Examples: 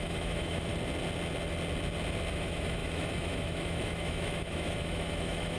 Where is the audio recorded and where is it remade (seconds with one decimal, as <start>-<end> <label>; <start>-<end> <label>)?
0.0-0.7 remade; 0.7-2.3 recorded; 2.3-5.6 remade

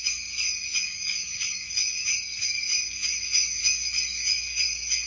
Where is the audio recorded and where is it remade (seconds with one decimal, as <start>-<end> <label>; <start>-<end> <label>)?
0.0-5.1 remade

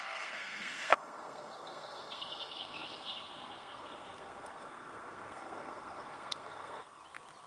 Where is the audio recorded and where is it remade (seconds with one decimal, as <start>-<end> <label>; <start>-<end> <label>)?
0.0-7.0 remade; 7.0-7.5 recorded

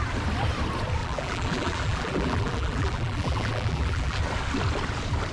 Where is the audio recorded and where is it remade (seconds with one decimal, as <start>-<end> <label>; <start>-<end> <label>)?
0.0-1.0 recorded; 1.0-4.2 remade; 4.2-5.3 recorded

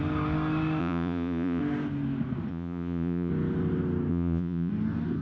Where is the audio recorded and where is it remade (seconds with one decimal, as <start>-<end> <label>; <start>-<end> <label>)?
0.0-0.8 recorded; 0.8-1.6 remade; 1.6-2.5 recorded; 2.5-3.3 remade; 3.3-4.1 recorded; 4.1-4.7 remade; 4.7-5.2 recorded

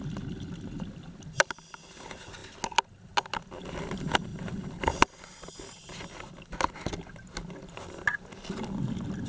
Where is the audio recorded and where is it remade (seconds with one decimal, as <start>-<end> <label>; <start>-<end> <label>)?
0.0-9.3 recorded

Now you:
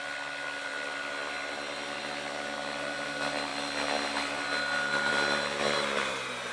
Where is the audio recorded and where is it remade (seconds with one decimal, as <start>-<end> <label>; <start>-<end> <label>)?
0.0-6.5 recorded

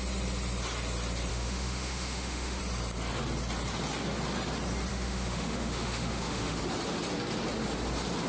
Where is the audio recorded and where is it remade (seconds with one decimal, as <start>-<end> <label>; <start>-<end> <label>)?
0.0-1.3 recorded; 1.3-2.6 remade; 2.6-4.9 recorded; 4.9-6.6 remade; 6.6-8.3 recorded